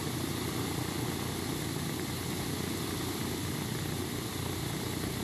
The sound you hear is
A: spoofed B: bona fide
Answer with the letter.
B